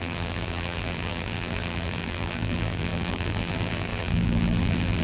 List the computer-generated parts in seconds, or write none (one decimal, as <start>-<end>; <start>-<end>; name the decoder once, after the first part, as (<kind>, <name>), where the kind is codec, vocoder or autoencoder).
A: 0.0-5.0 (vocoder, BigVGAN v2)